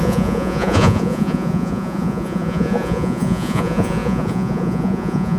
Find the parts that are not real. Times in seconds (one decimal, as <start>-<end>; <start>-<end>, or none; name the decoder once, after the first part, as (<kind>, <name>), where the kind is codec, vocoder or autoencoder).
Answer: 0.0-5.4 (vocoder, Vocos)